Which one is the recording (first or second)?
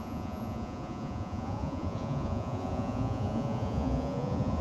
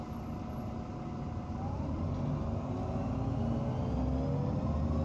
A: second